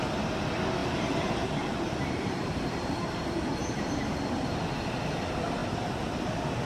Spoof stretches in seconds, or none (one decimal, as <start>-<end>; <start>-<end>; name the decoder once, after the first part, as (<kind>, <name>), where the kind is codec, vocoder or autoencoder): 0.8-3.9 (vocoder, BigVGAN v2); 5.6-6.2